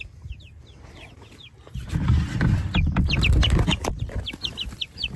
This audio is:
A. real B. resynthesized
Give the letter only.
A